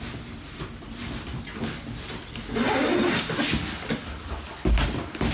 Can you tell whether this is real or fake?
real